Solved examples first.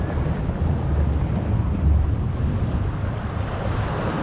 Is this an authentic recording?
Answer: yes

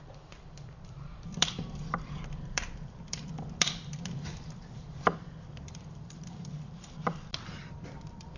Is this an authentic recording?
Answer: no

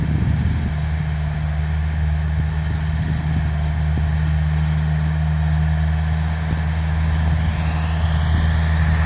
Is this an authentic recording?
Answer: yes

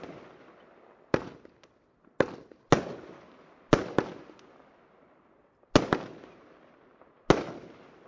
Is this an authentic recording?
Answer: yes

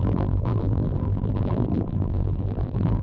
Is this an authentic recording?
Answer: no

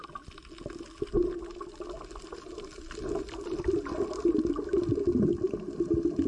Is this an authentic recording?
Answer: yes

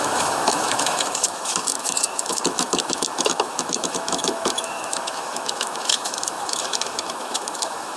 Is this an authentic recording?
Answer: no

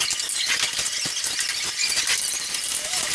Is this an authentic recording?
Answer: yes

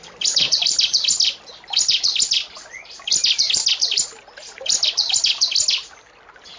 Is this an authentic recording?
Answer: yes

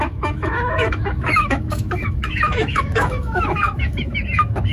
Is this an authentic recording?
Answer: no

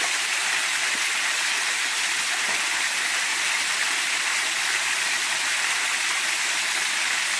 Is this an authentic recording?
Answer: yes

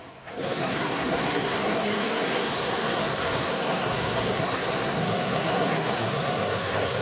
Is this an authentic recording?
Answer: no